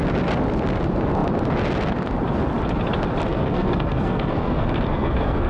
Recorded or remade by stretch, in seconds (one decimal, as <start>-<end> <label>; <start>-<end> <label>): 0.0-3.3 recorded; 3.3-5.5 remade